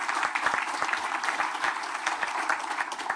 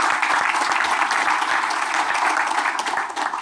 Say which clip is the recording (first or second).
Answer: second